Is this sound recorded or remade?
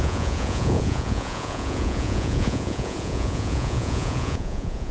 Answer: remade